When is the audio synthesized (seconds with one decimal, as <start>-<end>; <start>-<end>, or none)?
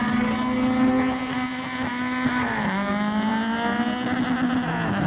none